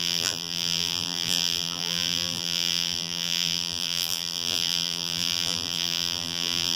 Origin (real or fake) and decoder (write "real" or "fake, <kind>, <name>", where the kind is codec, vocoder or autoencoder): fake, vocoder, BigVGAN v2